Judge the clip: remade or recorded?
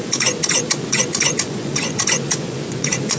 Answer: remade